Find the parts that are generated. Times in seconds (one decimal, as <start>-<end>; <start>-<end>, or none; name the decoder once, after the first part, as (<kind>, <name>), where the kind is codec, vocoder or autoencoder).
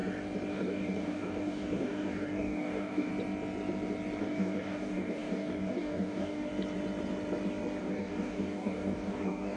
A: 0.5-3.1 (codec, DAC); 4.2-6.5; 7.8-9.6